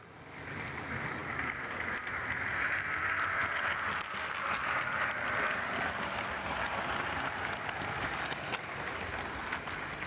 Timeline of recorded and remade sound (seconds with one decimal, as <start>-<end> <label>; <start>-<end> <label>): 0.0-10.1 recorded